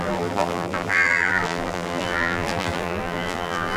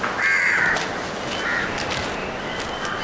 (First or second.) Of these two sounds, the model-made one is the first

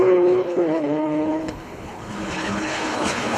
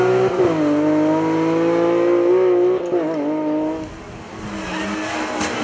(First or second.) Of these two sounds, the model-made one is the first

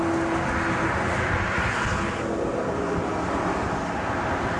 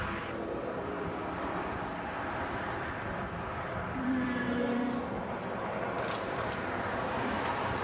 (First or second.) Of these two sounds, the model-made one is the second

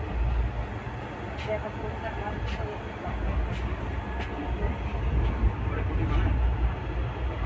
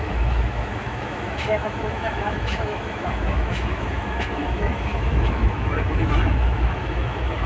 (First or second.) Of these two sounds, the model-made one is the second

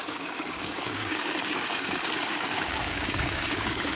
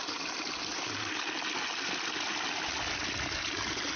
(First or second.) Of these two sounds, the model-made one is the first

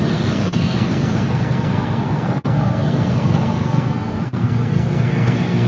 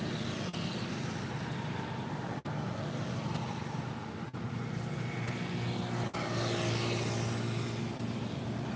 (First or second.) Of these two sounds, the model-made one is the first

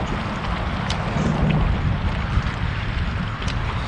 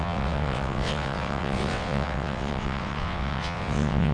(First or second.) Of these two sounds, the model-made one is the second